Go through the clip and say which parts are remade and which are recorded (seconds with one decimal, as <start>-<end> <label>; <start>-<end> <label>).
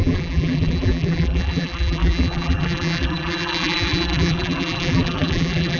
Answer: 0.0-5.8 remade